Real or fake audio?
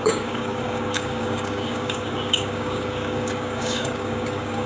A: fake